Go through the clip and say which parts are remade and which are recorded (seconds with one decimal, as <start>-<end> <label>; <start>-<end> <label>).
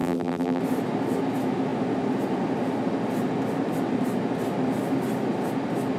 0.0-0.6 remade; 0.6-6.0 recorded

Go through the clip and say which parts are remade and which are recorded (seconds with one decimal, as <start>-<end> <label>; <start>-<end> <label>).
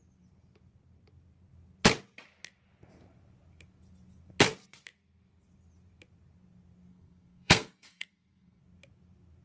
0.0-6.9 recorded; 6.9-8.6 remade; 8.6-9.4 recorded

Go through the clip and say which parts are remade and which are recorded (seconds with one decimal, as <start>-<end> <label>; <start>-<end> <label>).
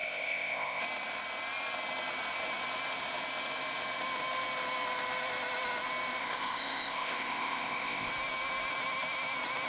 0.0-0.8 remade; 0.8-6.2 recorded; 6.2-8.1 remade; 8.1-9.7 recorded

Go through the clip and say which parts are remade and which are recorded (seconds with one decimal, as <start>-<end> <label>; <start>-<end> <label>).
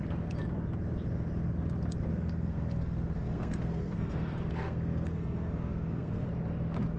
0.0-2.1 recorded; 2.1-6.3 remade; 6.3-7.0 recorded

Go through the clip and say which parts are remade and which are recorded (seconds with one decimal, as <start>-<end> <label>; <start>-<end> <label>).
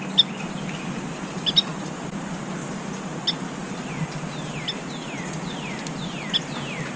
0.0-7.0 recorded